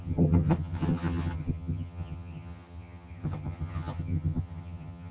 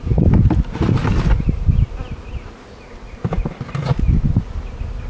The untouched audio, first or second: second